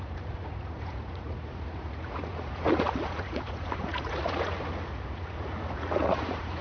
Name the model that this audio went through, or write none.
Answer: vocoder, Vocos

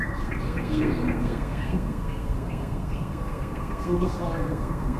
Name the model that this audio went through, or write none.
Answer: codec, SNAC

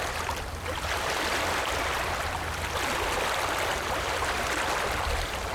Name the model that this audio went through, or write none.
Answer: none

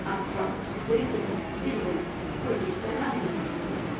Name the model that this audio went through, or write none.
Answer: codec, SNAC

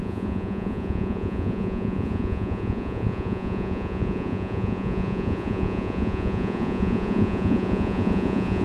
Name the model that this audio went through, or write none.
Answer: vocoder, Vocos